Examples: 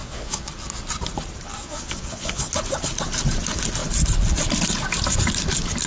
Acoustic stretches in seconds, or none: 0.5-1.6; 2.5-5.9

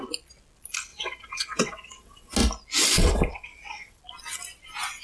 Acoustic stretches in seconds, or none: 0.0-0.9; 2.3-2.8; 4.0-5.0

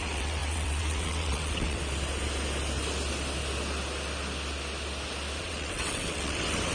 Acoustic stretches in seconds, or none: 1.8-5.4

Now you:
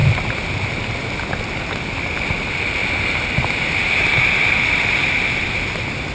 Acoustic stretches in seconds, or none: 0.0-6.1